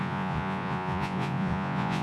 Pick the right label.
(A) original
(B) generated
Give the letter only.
B